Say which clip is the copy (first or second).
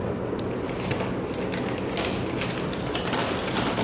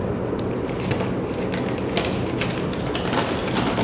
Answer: first